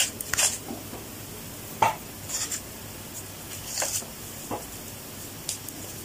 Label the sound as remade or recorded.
recorded